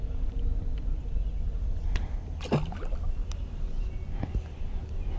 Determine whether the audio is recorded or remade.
recorded